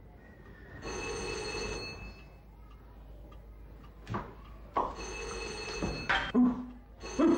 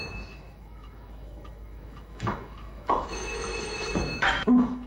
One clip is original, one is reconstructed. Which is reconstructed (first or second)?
second